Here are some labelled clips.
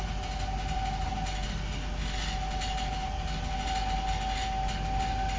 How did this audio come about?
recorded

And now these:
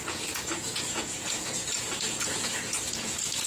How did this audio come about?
remade